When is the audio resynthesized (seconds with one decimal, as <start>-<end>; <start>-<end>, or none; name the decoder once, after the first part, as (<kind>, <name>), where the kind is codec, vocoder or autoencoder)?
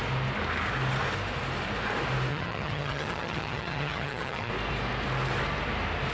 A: 2.3-4.5 (vocoder, HiFi-GAN)